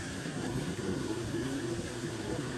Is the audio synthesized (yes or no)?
yes